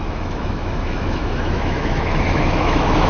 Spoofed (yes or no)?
yes